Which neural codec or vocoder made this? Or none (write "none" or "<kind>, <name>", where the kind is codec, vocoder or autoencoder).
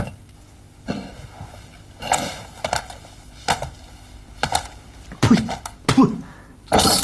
none